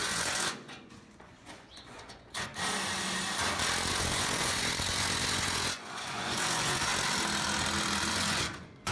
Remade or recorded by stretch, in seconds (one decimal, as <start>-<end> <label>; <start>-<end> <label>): 0.0-2.5 remade; 2.5-3.9 recorded; 3.9-6.9 remade; 6.9-8.1 recorded; 8.1-8.9 remade